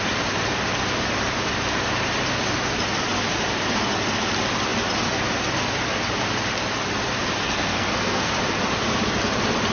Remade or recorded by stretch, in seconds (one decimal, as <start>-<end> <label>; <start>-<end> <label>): 0.0-7.4 recorded; 7.4-8.3 remade; 8.3-9.7 recorded